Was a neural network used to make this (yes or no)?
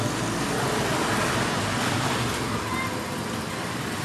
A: no